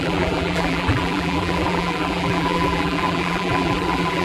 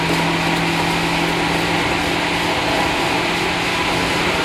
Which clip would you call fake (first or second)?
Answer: first